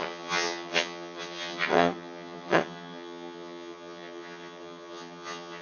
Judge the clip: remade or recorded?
remade